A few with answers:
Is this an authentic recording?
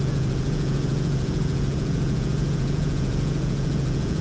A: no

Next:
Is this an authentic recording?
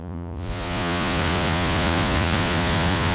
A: no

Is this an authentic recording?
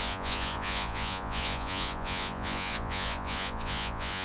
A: no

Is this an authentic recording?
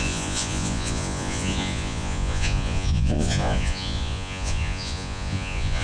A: no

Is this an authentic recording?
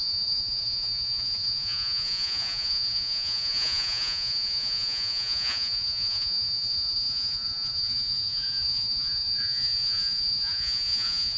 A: no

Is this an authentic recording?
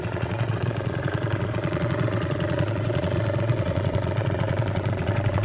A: no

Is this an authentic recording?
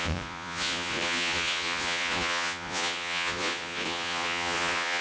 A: no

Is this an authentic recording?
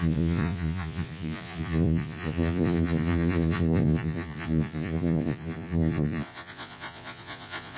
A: no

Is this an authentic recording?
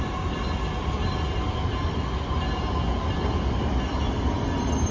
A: yes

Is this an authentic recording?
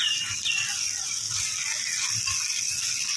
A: yes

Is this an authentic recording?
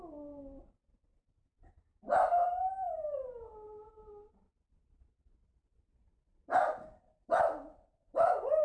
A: yes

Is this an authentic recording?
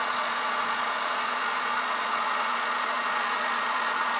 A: no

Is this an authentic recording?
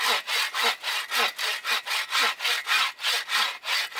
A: yes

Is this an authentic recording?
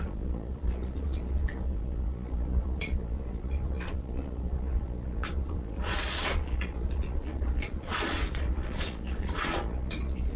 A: no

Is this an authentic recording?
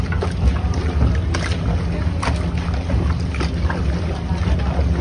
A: yes